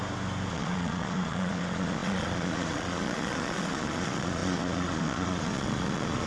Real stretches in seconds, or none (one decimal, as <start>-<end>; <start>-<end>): 0.0-0.5